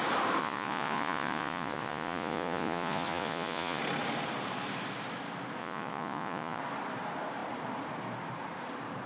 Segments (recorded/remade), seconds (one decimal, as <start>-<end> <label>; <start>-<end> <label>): 0.0-0.4 recorded; 0.4-3.8 remade; 3.8-5.6 recorded; 5.6-6.6 remade; 6.6-9.1 recorded